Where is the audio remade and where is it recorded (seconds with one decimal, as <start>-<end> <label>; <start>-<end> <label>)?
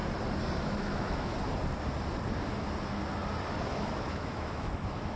0.0-0.6 recorded; 0.6-1.3 remade; 1.3-3.7 recorded; 3.7-5.2 remade